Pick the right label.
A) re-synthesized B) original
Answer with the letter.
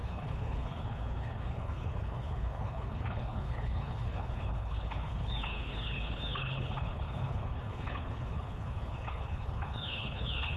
A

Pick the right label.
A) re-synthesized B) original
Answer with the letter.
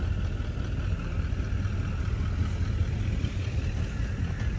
B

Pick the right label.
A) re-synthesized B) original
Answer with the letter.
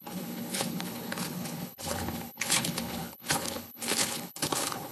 A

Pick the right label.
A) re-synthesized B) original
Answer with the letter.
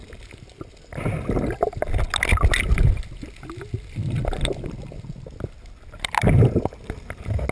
B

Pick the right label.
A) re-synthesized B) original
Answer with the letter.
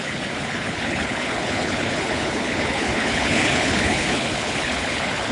A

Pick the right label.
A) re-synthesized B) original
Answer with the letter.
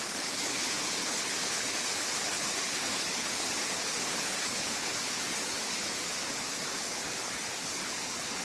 A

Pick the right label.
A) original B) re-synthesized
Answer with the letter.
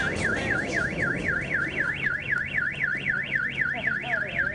A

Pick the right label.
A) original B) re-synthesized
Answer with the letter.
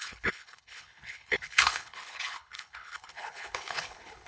B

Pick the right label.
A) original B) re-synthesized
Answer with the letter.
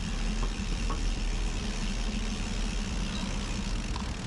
A